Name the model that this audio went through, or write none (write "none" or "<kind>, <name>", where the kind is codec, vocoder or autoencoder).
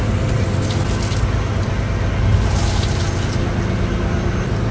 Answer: none